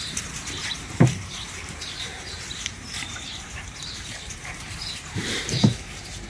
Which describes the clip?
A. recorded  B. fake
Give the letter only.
B